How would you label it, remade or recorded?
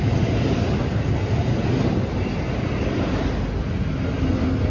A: recorded